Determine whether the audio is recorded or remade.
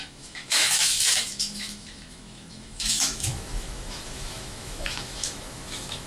remade